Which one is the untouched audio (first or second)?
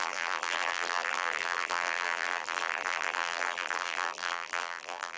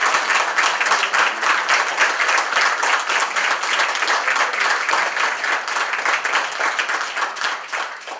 second